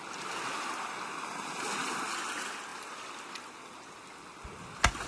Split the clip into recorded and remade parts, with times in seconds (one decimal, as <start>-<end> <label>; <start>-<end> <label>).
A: 0.0-5.1 recorded